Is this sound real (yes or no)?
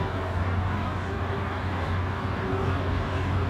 no